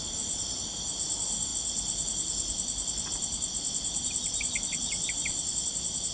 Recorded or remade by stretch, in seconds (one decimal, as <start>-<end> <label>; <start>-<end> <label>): 0.0-6.1 recorded